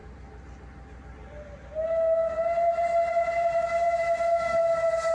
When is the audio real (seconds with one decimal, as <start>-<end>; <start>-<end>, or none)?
0.0-5.1